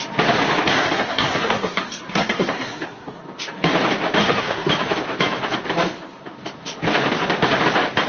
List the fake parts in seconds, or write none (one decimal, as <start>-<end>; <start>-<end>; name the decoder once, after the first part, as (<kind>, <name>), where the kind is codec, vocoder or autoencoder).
0.7-3.2 (codec, SNAC); 4.2-4.7